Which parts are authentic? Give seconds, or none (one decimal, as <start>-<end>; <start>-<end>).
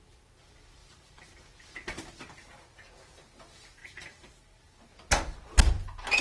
0.0-0.8; 2.1-3.8; 4.3-6.2